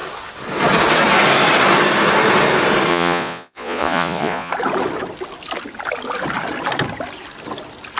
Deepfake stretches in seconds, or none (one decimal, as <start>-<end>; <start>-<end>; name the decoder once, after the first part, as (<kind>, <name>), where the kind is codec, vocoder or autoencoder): 2.9-4.5 (vocoder, Vocos)